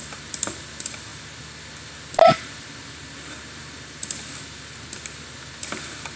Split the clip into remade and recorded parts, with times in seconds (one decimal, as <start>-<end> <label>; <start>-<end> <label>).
0.0-6.2 recorded